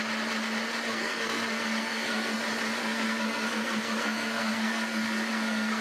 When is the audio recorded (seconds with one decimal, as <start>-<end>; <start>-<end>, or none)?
0.0-0.9; 2.4-2.8